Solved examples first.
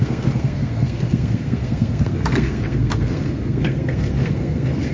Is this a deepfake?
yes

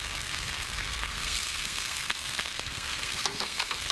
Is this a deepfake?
yes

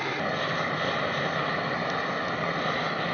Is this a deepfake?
no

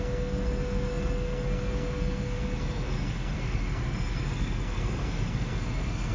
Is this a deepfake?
yes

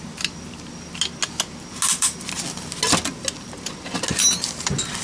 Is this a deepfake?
no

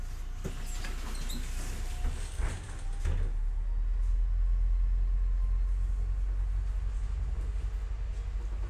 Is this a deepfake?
no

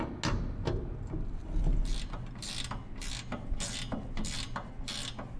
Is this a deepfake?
no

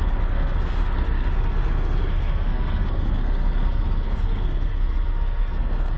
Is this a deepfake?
yes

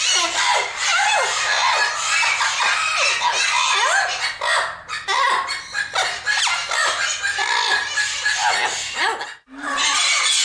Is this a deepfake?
no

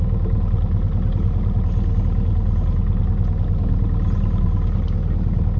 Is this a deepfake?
no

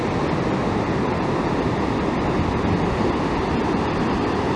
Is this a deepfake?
no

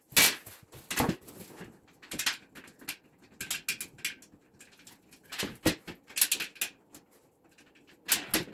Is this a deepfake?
no